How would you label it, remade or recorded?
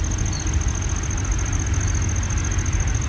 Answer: recorded